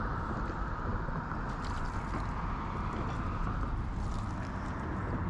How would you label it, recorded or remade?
recorded